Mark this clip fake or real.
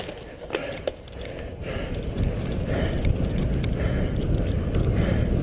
real